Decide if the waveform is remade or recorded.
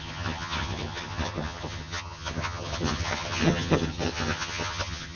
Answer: remade